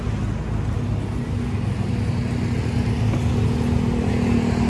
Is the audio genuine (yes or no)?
yes